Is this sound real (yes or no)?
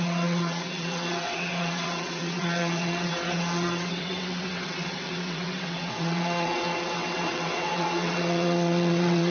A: no